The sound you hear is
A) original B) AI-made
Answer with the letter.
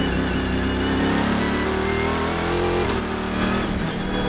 A